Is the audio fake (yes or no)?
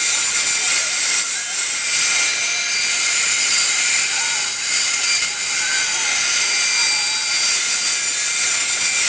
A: no